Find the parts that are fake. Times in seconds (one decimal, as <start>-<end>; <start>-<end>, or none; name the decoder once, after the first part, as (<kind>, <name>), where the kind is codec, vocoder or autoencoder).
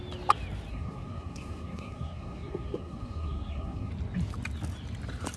0.7-3.9 (codec, SNAC)